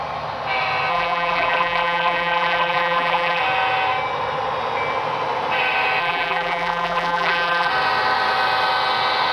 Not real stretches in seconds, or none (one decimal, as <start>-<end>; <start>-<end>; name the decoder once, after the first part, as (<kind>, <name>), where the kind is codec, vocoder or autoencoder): 0.9-3.4 (vocoder, BigVGAN v2); 6.0-7.7